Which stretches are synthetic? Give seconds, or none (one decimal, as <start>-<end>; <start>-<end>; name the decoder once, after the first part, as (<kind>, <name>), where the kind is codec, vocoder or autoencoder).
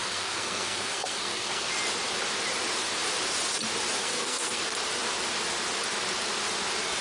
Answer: 0.0-1.7 (codec, SNAC); 4.0-4.6